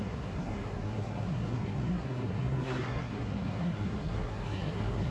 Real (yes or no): no